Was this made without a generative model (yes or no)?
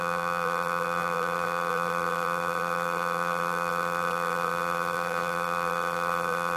no